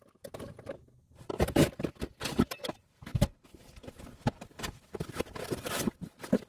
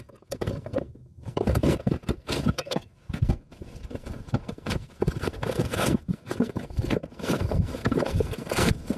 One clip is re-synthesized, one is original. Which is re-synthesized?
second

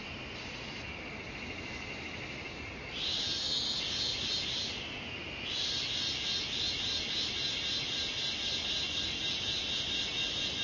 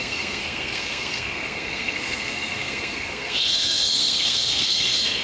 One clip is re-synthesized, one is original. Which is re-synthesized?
second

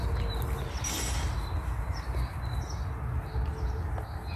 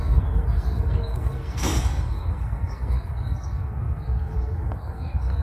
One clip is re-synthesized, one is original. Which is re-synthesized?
second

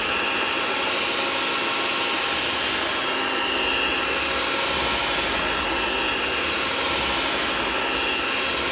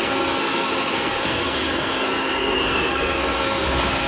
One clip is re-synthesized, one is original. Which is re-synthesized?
second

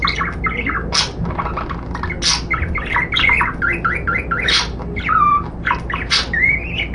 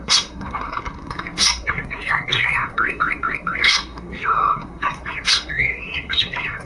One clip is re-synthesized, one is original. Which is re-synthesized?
second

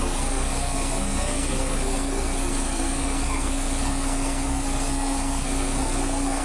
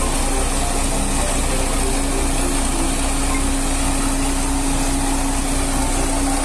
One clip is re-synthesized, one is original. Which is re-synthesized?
first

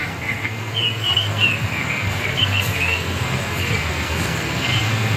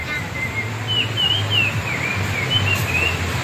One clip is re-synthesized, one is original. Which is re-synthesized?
first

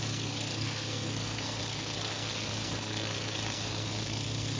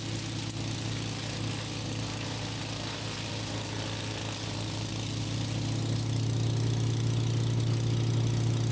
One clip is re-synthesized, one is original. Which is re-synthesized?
first